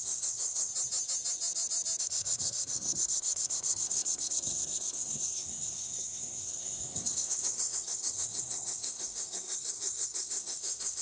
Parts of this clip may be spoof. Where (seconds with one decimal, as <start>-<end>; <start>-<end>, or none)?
0.0-0.7; 2.0-11.0